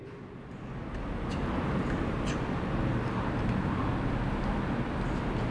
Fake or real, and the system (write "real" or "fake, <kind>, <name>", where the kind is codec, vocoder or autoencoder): real